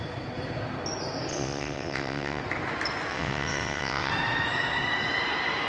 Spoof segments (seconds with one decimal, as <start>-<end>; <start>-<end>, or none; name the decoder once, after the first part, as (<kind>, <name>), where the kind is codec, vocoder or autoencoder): 1.3-2.4 (vocoder, WaveNeXt); 3.1-4.1